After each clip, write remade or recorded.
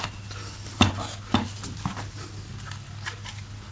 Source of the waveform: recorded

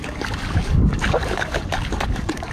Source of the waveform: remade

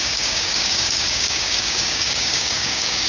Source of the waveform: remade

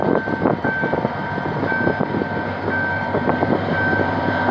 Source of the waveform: recorded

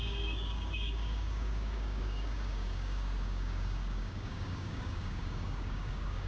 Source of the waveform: remade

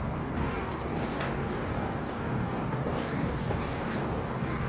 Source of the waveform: remade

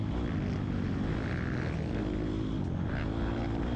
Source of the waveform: recorded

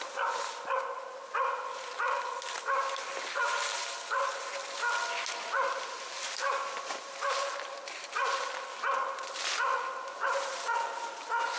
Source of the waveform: recorded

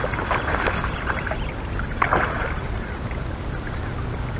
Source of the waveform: recorded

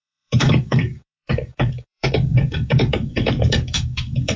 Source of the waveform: remade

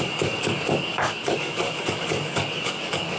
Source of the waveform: remade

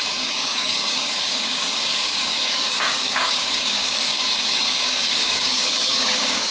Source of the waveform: remade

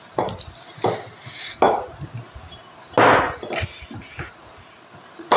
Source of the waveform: recorded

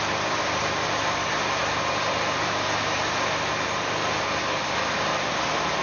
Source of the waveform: recorded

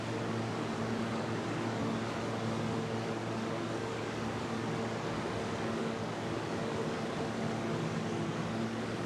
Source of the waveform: remade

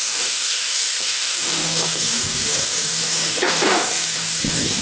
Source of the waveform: remade